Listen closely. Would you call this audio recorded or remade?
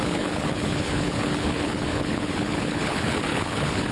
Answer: remade